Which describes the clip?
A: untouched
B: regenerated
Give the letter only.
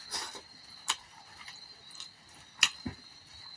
B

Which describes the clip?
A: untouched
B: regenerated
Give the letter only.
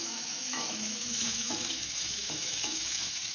B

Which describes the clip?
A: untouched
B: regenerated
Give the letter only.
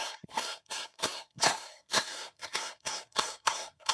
B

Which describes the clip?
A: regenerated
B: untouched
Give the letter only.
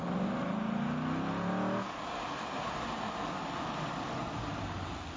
B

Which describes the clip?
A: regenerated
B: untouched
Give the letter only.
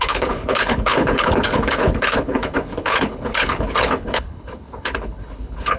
A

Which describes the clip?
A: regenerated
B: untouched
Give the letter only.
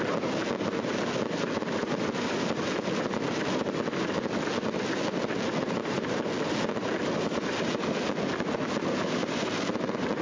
B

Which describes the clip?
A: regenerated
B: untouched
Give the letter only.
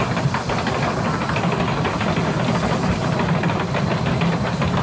B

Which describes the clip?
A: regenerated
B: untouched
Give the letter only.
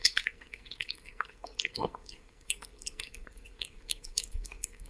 A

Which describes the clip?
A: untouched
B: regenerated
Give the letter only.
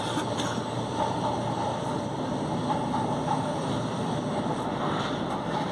B